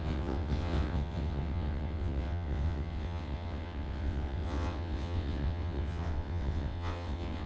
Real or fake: fake